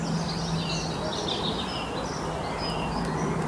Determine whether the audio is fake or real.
real